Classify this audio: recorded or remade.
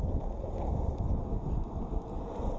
recorded